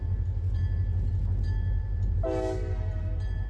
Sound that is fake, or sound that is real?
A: real